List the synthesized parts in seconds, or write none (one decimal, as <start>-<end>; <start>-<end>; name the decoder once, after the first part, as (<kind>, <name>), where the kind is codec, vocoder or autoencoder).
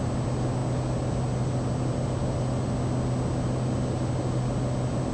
none